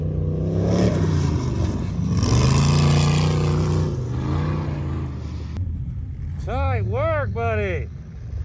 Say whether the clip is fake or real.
real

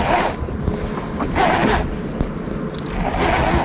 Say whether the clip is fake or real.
real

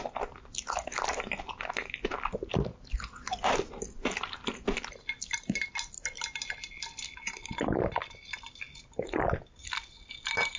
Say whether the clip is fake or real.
real